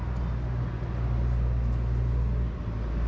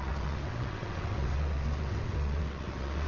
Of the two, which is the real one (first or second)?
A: first